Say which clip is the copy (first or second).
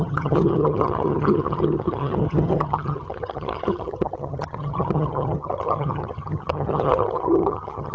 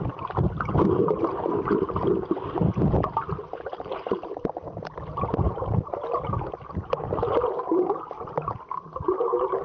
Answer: first